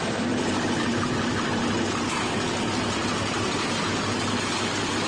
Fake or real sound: real